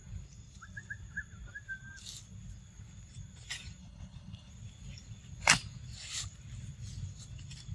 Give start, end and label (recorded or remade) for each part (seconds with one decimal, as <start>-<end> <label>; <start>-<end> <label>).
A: 0.0-3.8 recorded; 3.8-4.5 remade; 4.5-7.7 recorded